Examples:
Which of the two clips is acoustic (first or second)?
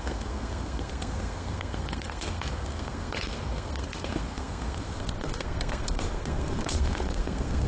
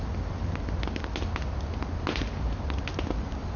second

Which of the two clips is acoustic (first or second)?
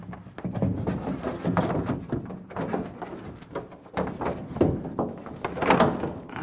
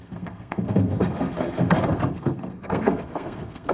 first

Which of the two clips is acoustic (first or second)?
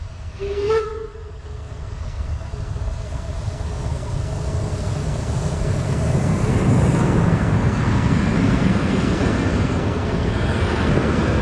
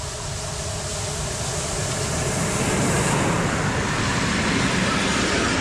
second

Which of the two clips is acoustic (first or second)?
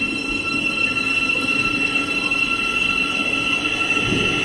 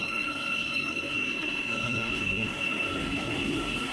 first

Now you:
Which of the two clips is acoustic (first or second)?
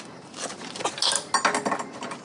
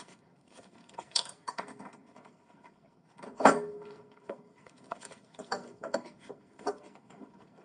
first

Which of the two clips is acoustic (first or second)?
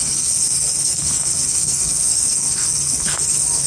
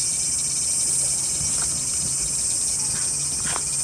second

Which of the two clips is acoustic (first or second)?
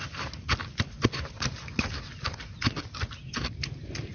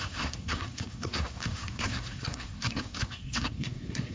first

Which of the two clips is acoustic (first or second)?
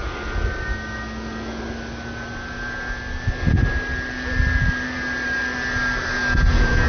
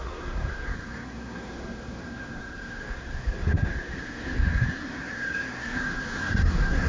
first